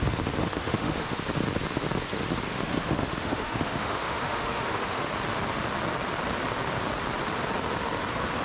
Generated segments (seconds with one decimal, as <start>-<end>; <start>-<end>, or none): 0.4-1.2; 2.5-5.1